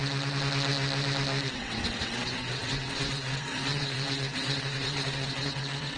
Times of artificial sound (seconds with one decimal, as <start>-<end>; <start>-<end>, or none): 1.5-6.0